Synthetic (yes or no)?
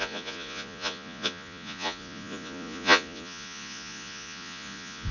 yes